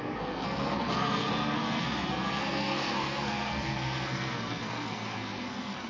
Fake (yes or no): yes